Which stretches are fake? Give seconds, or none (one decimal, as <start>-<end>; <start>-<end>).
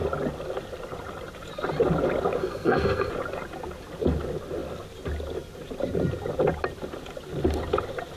2.4-3.1